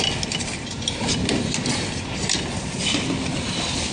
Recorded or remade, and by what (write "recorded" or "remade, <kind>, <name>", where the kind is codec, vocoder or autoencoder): recorded